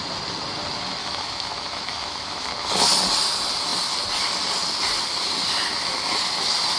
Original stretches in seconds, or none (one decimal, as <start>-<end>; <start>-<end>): 0.0-1.0; 2.5-6.8